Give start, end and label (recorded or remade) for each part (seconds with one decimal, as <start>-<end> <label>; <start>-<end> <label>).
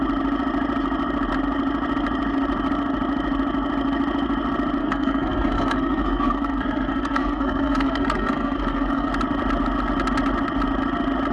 0.0-4.8 recorded; 4.8-9.1 remade; 9.1-11.3 recorded